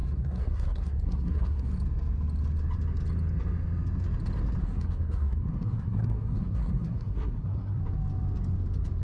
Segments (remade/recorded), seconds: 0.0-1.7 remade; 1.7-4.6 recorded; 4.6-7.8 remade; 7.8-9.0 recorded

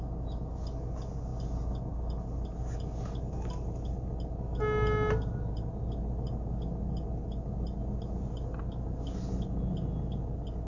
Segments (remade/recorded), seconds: 0.0-10.7 recorded

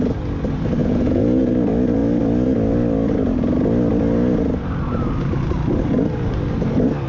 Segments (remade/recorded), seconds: 0.0-0.8 recorded; 0.8-1.5 remade; 1.5-7.1 recorded

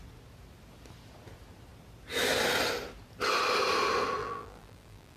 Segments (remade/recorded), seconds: 0.0-4.2 recorded; 4.2-5.2 remade

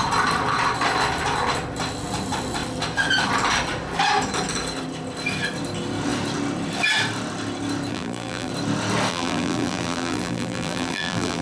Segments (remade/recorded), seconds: 0.0-7.9 recorded; 7.9-8.5 remade; 8.5-9.1 recorded; 9.1-11.4 remade

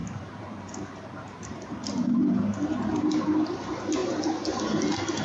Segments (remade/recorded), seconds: 0.0-4.0 remade; 4.0-5.2 recorded